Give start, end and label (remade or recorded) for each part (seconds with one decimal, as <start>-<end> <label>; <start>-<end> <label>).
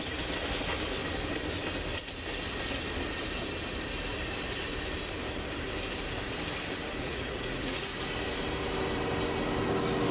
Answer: 0.0-7.0 recorded; 7.0-8.0 remade; 8.0-10.1 recorded